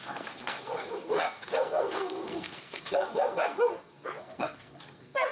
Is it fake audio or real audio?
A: fake